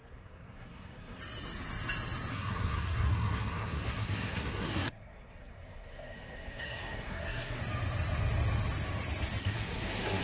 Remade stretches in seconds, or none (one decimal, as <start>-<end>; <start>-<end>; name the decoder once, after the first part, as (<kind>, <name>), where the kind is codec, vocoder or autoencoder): 0.0-1.2 (codec, SNAC); 2.3-7.6; 9.4-10.2

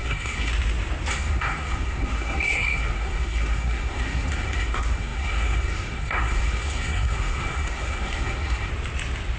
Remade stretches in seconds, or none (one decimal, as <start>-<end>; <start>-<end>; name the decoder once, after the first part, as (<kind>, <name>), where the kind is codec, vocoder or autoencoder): 0.0-0.5 (codec, SNAC); 1.1-8.7

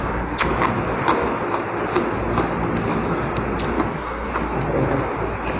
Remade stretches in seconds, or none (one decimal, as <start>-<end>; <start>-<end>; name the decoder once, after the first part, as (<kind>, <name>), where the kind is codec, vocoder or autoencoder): 0.0-0.5 (codec, SNAC); 3.9-4.3